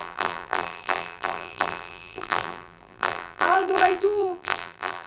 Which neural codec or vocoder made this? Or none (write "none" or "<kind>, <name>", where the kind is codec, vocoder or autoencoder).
vocoder, BigVGAN v2